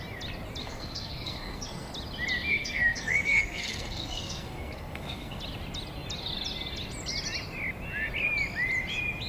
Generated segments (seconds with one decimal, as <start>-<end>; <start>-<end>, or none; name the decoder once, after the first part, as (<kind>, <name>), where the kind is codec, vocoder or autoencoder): 0.6-1.9 (codec, SNAC); 2.5-5.4